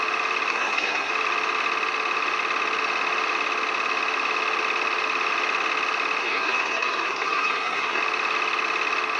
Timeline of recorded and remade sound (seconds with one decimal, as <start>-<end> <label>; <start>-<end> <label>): 0.0-0.5 recorded; 0.5-1.1 remade; 1.1-6.2 recorded; 6.2-8.0 remade; 8.0-9.2 recorded